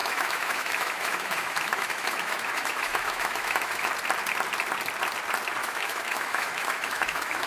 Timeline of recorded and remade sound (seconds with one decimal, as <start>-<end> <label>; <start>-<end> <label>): 0.0-3.9 remade; 3.9-5.6 recorded; 5.6-7.5 remade